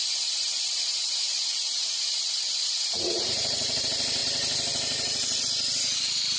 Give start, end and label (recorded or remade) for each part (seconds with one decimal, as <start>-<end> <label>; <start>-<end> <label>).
0.0-3.8 remade; 3.8-6.4 recorded